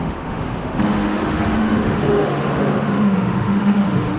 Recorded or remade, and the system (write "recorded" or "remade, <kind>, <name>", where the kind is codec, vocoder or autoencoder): remade, autoencoder, DAC-VAE